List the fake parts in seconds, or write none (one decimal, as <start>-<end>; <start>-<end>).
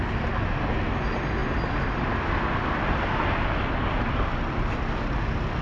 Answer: none